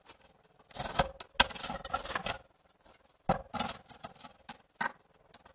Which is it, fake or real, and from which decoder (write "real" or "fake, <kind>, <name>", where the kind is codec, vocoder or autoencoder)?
real